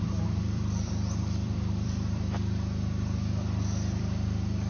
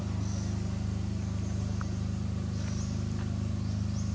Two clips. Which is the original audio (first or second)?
second